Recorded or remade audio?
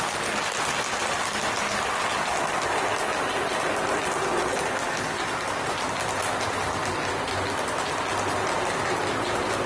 recorded